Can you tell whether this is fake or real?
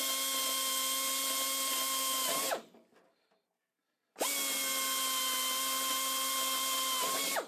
real